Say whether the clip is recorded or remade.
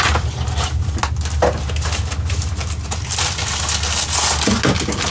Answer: recorded